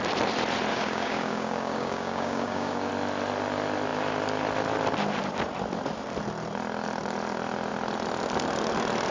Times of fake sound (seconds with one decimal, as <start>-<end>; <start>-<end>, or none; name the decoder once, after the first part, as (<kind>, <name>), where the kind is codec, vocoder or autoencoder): 0.7-2.9 (codec, DAC)